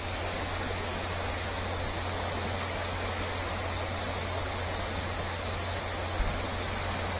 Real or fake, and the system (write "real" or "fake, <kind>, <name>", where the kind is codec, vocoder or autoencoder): real